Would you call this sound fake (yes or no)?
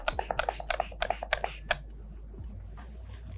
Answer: no